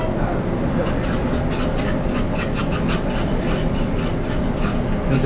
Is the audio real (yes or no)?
yes